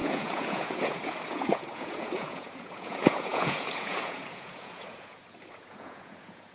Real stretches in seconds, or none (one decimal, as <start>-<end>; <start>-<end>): none